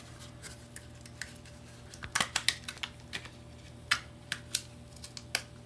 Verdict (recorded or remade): recorded